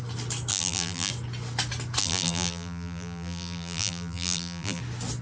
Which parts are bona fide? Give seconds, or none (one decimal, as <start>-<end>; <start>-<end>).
0.0-0.5; 1.1-2.0; 4.8-5.2